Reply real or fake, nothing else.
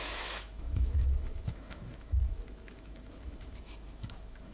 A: fake